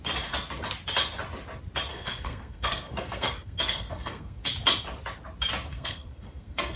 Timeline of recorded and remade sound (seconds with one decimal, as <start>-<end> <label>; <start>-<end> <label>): 0.0-1.9 recorded; 1.9-4.4 remade; 4.4-5.7 recorded; 5.7-6.8 remade